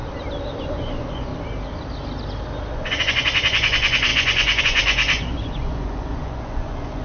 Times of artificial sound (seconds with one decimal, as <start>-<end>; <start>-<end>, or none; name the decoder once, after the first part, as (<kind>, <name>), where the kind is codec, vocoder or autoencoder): 0.6-1.3 (vocoder, Vocos); 2.7-7.0